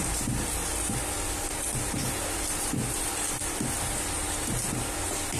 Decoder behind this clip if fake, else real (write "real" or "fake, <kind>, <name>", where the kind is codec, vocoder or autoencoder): real